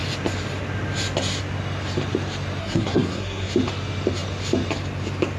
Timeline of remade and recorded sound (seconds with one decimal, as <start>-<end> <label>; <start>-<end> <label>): 0.0-2.6 recorded; 2.6-3.5 remade; 3.5-5.4 recorded

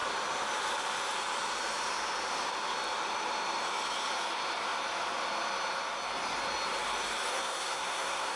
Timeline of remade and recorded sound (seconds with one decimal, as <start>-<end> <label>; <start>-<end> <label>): 0.0-7.3 recorded; 7.3-8.4 remade